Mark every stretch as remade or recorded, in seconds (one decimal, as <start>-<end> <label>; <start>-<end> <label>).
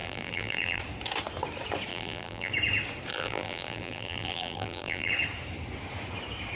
0.0-0.8 remade; 0.8-1.9 recorded; 1.9-2.5 remade; 2.5-3.1 recorded; 3.1-5.1 remade; 5.1-6.6 recorded